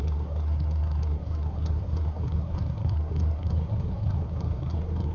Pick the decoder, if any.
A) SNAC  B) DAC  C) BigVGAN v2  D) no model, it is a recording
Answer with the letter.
A